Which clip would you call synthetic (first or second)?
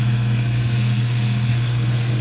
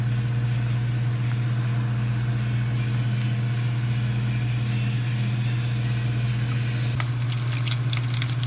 first